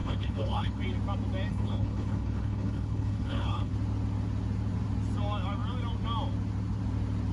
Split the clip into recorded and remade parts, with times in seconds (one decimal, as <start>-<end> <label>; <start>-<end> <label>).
0.0-0.8 remade; 0.8-1.5 recorded; 1.5-3.7 remade; 3.7-7.3 recorded